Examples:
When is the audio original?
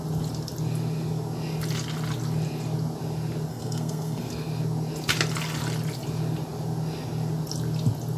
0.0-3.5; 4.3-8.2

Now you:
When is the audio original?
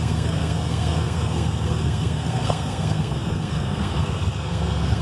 none